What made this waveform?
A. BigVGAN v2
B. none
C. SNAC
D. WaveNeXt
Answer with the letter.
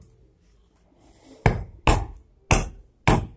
B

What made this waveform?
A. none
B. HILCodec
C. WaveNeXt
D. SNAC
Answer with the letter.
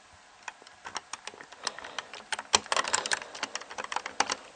A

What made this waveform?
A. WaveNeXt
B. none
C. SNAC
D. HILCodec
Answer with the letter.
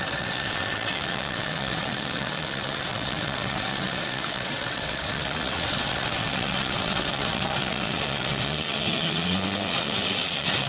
A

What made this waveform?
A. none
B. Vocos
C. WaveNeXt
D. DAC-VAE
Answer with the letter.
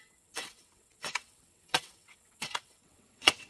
C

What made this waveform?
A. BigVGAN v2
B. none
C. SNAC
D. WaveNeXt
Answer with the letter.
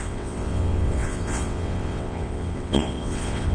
D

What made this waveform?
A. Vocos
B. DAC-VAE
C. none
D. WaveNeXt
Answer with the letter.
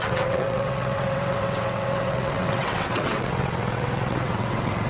D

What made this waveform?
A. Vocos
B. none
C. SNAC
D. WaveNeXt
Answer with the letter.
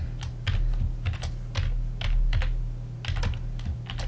B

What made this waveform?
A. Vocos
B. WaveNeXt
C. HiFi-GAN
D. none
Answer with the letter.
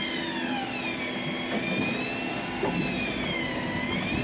D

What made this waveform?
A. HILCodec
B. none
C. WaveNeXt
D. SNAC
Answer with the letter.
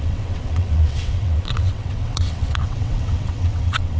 C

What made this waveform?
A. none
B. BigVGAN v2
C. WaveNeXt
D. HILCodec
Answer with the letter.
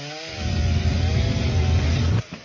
A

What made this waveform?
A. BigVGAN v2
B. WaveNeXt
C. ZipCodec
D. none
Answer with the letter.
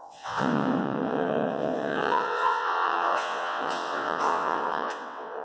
B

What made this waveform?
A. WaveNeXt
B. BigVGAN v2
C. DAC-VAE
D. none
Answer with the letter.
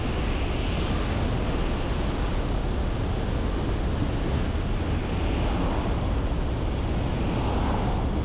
D